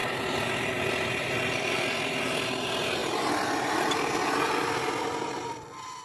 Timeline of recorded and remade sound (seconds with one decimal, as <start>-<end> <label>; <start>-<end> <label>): 0.0-6.0 recorded